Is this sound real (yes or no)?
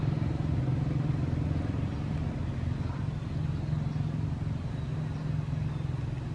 yes